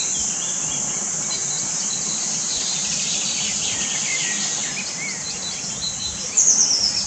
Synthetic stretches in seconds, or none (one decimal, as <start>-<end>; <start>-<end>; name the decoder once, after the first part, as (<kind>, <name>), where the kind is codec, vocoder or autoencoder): none